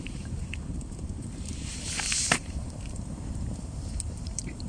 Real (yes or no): no